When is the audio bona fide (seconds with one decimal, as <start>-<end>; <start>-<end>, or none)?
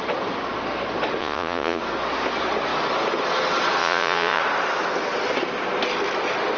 0.0-1.2; 1.8-3.8; 4.4-6.6